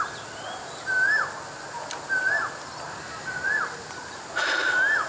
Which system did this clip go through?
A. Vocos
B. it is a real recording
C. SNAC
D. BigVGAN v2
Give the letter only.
B